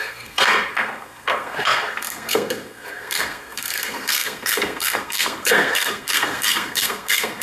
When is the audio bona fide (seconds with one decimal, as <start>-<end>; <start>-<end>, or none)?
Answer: none

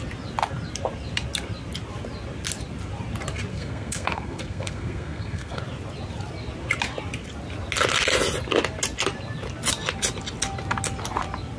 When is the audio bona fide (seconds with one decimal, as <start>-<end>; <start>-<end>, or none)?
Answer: 0.0-3.5; 5.6-11.6

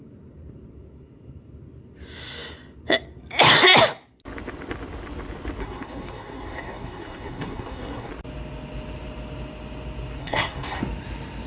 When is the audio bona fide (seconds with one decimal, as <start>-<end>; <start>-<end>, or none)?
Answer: 0.0-5.6; 8.1-10.2; 10.8-11.5

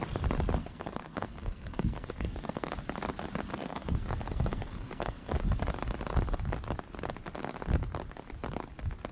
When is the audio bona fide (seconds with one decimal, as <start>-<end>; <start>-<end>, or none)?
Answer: 0.0-0.6; 2.7-3.5; 5.6-9.1

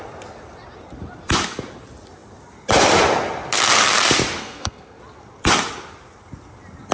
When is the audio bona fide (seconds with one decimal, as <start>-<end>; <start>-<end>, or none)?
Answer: 0.0-4.4; 5.0-6.9

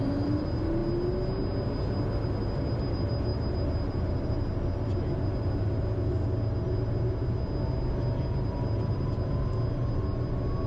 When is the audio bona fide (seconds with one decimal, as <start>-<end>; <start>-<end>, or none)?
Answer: 0.0-10.7

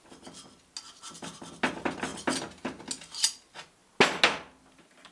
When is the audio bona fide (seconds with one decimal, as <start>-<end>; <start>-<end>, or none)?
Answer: 0.0-5.1

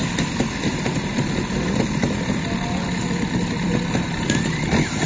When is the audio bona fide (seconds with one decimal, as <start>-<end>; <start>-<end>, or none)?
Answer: 0.0-5.1